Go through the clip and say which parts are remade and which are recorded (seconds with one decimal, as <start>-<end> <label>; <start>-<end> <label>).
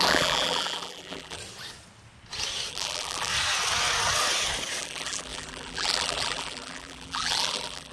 0.0-1.4 remade; 1.4-2.7 recorded; 2.7-3.3 remade; 3.3-4.8 recorded; 4.8-7.9 remade